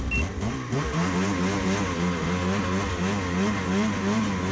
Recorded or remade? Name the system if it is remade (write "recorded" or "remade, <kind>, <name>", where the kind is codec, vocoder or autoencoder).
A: recorded